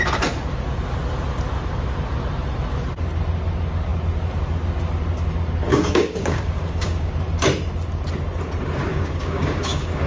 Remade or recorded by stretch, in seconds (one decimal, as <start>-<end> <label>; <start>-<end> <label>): 0.0-5.7 recorded; 5.7-7.1 remade; 7.1-8.9 recorded; 8.9-10.1 remade

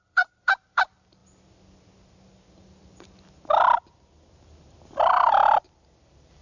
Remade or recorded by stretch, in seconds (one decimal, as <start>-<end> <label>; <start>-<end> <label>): 0.0-1.2 remade; 1.2-5.0 recorded; 5.0-6.4 remade

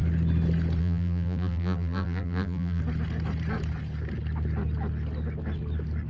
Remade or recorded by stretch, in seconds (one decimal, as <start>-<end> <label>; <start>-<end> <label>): 0.0-0.8 recorded; 0.8-2.8 remade; 2.8-6.1 recorded

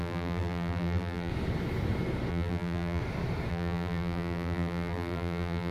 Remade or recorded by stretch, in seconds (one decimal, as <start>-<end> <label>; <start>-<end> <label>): 0.0-1.3 remade; 1.3-2.3 recorded; 2.3-3.0 remade; 3.0-3.5 recorded; 3.5-5.7 remade

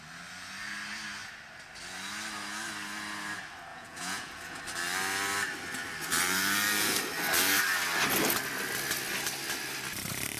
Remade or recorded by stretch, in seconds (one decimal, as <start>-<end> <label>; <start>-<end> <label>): 0.0-3.7 recorded; 3.7-4.6 remade; 4.6-10.4 recorded

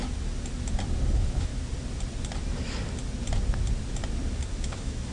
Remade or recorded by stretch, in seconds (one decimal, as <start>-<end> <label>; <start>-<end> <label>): 0.0-1.1 recorded; 1.1-1.5 remade; 1.5-4.6 recorded; 4.6-5.1 remade

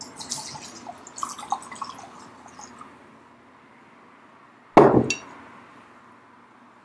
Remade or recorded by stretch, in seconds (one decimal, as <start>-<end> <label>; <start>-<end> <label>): 0.0-6.8 recorded